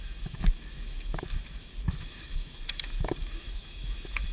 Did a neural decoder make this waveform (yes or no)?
yes